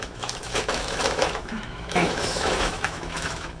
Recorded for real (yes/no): no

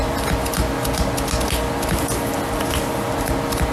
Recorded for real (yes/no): yes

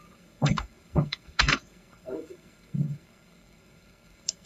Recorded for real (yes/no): no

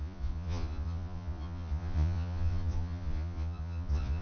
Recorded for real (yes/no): no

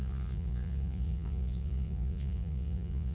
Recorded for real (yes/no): no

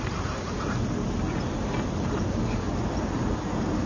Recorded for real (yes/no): yes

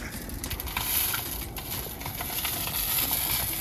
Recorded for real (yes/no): yes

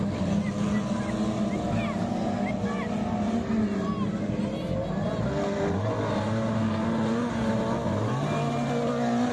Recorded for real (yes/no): yes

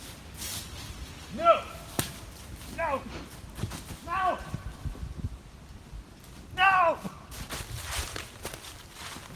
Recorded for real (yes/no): yes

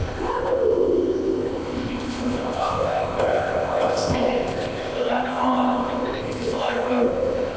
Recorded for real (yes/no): no